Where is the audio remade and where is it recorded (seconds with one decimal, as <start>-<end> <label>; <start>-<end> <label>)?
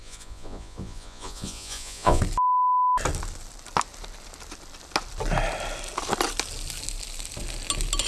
0.0-2.2 remade; 2.2-8.1 recorded